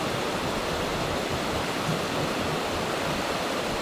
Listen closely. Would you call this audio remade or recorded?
recorded